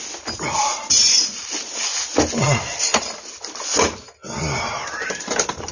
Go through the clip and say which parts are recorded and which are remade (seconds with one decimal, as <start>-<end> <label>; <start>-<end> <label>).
0.0-5.7 recorded